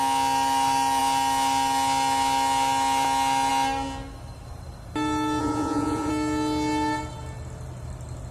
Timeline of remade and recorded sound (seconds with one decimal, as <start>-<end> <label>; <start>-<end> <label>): 0.0-5.4 recorded; 5.4-6.1 remade; 6.1-8.3 recorded

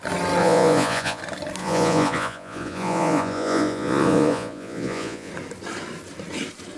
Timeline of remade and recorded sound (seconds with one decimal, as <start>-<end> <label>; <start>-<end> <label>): 0.0-0.4 recorded; 0.4-1.2 remade; 1.2-1.6 recorded; 1.6-5.3 remade; 5.3-6.8 recorded

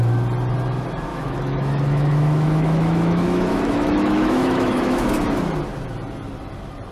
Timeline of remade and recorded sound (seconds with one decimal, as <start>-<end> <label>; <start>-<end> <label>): 0.0-1.1 recorded; 1.1-5.1 remade; 5.1-6.9 recorded

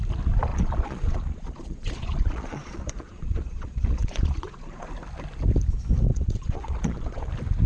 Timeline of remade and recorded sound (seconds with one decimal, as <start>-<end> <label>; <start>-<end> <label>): 0.0-0.5 recorded; 0.5-4.9 remade; 4.9-6.1 recorded; 6.1-7.3 remade; 7.3-7.7 recorded

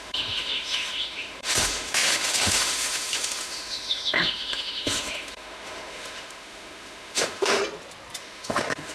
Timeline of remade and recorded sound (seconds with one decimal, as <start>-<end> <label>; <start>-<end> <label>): 0.0-7.6 remade; 7.6-8.2 recorded; 8.2-8.9 remade

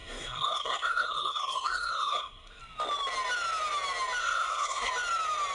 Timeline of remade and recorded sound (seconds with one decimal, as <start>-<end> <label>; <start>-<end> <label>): 0.0-2.6 remade; 2.6-4.2 recorded; 4.2-4.9 remade; 4.9-5.5 recorded

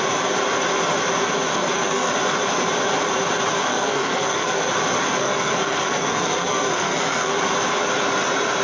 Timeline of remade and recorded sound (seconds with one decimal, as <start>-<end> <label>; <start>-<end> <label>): 0.0-1.5 recorded; 1.5-2.1 remade; 2.1-3.7 recorded; 3.7-4.7 remade; 4.7-5.2 recorded; 5.2-7.3 remade; 7.3-8.6 recorded

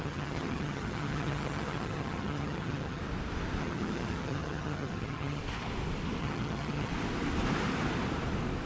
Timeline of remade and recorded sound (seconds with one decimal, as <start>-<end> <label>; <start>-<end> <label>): 0.0-3.0 remade; 3.0-3.6 recorded; 3.6-5.4 remade; 5.4-6.2 recorded; 6.2-6.9 remade; 6.9-8.7 recorded